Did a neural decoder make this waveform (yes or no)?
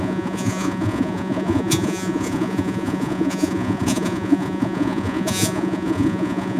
yes